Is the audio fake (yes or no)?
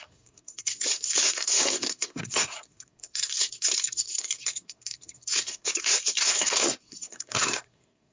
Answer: yes